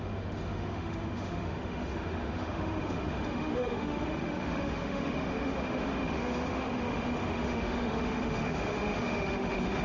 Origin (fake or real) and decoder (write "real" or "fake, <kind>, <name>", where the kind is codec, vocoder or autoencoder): fake, autoencoder, DAC-VAE